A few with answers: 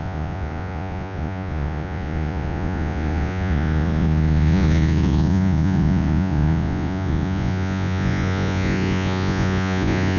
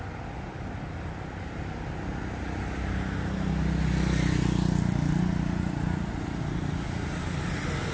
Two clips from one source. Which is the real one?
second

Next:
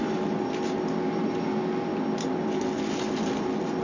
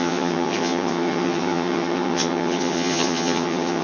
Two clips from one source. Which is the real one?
first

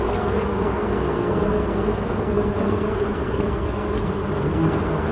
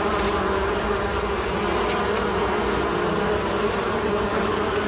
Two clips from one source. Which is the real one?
second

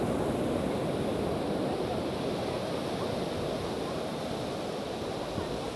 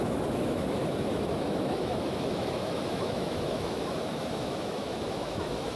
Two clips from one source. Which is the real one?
first